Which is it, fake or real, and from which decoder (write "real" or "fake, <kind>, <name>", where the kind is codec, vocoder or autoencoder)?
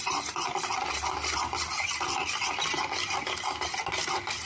real